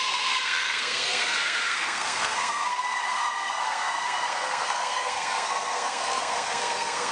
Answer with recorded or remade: remade